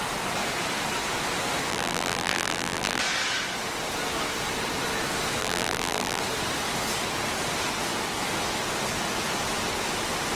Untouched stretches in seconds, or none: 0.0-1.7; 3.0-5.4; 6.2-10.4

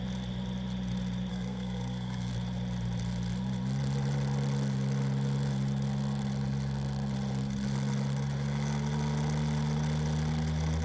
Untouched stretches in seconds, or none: 0.0-1.3; 2.3-10.8

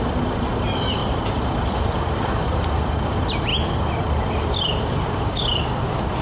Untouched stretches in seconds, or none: 3.5-4.6

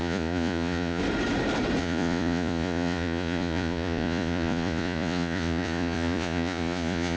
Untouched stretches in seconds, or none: 1.0-1.8

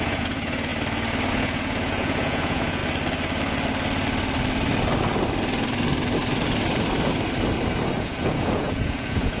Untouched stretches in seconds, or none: 0.7-1.3; 2.8-8.0

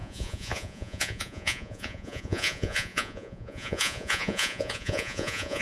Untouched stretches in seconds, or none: none

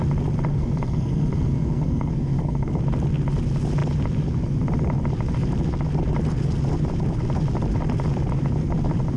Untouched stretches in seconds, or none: 0.0-0.5; 2.8-9.2